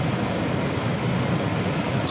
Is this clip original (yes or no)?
yes